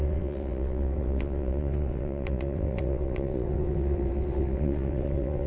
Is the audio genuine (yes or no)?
no